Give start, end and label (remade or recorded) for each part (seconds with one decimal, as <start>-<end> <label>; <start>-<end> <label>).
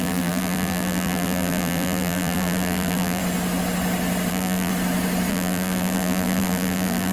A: 0.0-3.2 remade; 3.2-4.3 recorded; 4.3-4.7 remade; 4.7-5.3 recorded; 5.3-7.1 remade